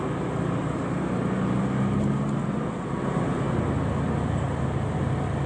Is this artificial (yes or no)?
no